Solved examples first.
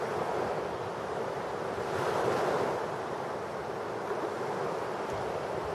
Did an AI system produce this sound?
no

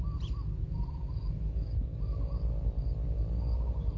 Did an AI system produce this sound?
no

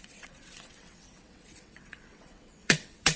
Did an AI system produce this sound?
yes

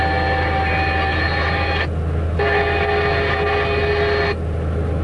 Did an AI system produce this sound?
no